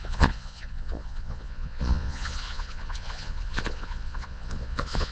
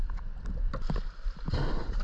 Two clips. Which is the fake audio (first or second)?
first